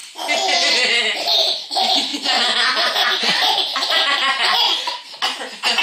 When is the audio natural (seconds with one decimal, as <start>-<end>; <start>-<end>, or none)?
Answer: 0.0-5.8